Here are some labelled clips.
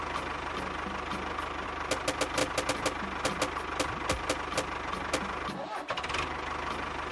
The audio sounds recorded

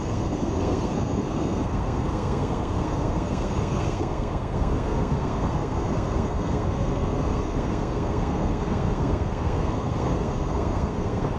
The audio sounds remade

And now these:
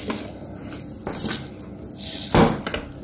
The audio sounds recorded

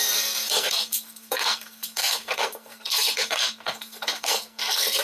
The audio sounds remade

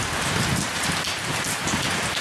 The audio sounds recorded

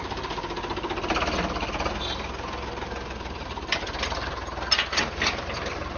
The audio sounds recorded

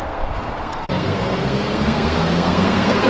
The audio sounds remade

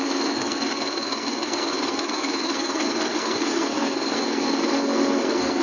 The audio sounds remade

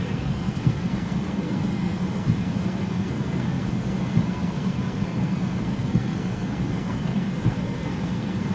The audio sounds remade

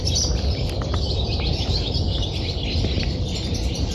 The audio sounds recorded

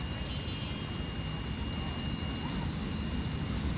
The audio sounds recorded